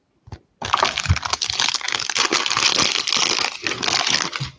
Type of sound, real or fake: real